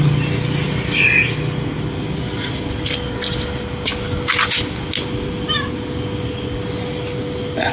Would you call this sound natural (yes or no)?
yes